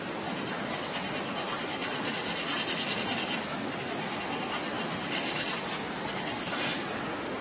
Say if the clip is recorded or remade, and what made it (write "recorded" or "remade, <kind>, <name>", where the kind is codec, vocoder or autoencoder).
recorded